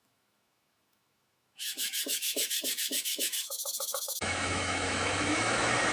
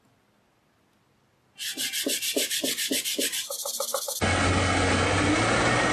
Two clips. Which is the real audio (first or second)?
second